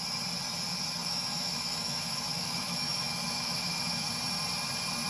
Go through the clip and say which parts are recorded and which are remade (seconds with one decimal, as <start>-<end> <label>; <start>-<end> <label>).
0.0-1.0 recorded; 1.0-4.1 remade; 4.1-5.1 recorded